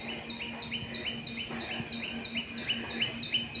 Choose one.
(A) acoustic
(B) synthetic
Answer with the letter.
A